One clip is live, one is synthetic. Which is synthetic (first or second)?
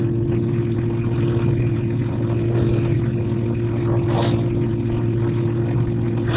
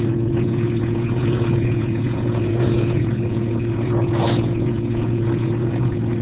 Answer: second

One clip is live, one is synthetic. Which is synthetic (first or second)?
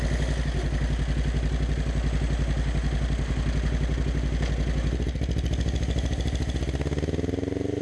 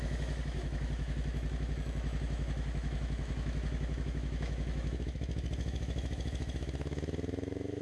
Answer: second